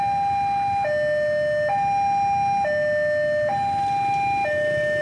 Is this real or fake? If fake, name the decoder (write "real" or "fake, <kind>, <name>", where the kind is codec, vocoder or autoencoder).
real